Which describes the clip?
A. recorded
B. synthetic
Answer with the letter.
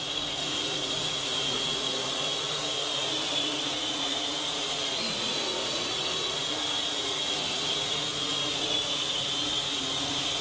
B